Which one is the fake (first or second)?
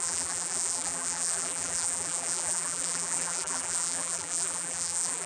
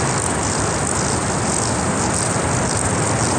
first